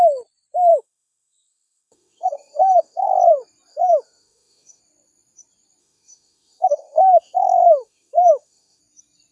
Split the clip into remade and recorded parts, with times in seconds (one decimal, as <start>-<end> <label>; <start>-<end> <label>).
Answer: 0.0-0.7 recorded; 0.7-3.1 remade; 3.1-3.7 recorded; 3.7-4.8 remade; 4.8-5.8 recorded; 5.8-8.8 remade; 8.8-9.3 recorded

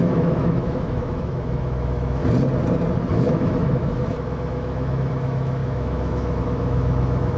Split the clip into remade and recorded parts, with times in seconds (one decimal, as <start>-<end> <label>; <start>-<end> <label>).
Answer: 0.0-2.2 remade; 2.2-3.1 recorded; 3.1-7.4 remade

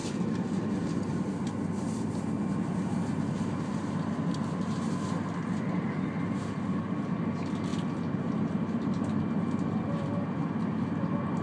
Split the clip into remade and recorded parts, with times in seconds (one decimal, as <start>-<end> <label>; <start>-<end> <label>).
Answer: 0.0-11.4 recorded

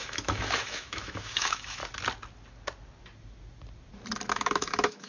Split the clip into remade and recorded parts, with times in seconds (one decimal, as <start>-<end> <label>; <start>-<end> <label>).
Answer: 0.0-1.8 remade; 1.8-4.3 recorded; 4.3-5.1 remade

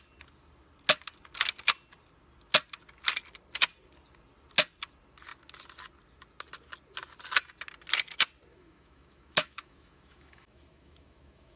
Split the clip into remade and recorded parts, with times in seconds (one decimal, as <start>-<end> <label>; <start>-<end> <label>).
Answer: 0.0-8.5 recorded; 8.5-11.6 remade

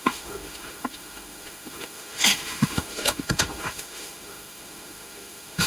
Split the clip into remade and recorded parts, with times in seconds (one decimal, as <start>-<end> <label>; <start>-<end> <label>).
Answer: 0.0-5.7 remade